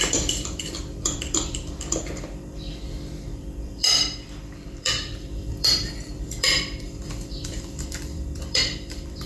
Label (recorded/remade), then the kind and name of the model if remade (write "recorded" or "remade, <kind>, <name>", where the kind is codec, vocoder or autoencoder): remade, vocoder, BigVGAN v2